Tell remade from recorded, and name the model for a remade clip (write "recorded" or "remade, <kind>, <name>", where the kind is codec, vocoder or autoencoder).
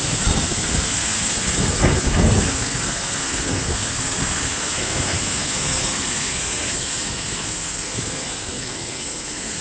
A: remade, codec, SNAC